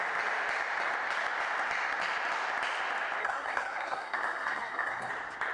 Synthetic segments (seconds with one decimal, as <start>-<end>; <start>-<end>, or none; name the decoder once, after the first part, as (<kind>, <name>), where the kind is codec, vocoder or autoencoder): 3.2-5.1 (codec, SNAC)